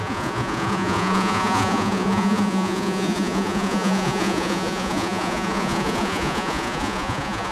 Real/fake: fake